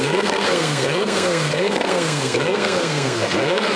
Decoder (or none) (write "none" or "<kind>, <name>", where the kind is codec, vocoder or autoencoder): codec, SNAC